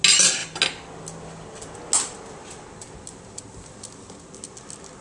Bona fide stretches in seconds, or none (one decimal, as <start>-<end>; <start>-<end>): 0.0-5.0